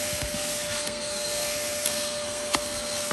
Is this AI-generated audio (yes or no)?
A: yes